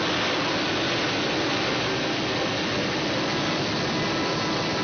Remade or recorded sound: recorded